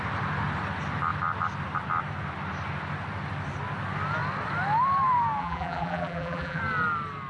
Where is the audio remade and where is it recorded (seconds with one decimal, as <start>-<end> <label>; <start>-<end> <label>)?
0.0-5.4 recorded; 5.4-6.6 remade; 6.6-7.3 recorded